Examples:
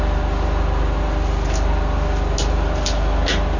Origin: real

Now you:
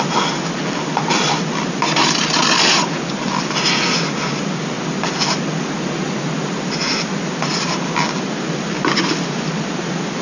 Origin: real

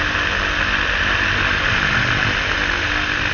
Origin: real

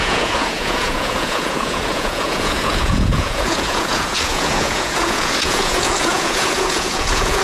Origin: fake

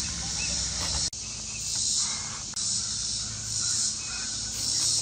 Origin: real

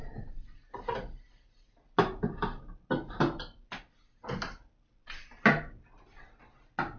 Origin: real